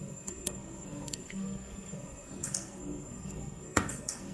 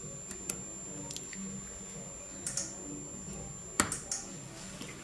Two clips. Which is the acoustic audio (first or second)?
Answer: second